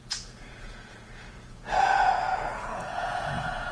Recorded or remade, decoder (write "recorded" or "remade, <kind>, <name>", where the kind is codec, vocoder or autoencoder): remade, vocoder, Vocos